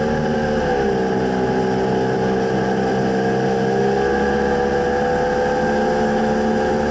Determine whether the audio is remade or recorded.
recorded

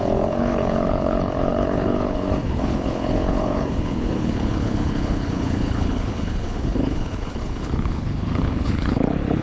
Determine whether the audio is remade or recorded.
remade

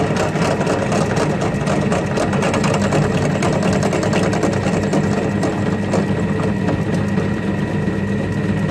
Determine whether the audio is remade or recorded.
recorded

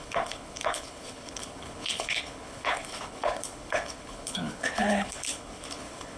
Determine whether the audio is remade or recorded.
remade